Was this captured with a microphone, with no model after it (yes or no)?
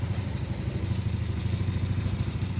no